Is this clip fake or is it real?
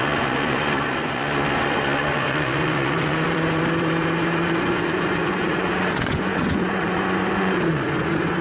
fake